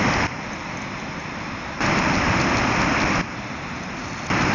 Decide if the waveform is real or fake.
fake